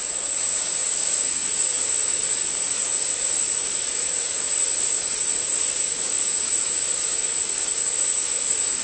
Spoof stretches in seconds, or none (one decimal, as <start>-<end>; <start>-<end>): 0.0-8.8